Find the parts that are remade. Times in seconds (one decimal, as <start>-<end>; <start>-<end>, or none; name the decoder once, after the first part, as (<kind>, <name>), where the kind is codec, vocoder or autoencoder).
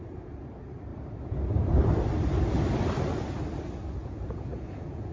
4.0-5.1 (vocoder, Vocos)